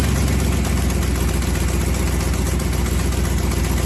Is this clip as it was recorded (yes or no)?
yes